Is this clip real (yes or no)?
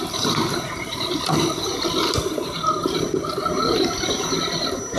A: yes